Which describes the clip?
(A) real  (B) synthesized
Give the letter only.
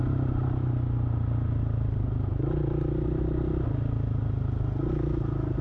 A